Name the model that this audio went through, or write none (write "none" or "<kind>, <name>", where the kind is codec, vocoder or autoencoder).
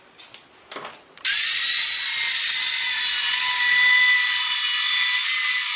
none